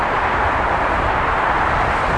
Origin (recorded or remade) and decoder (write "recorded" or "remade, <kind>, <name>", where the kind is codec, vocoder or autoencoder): recorded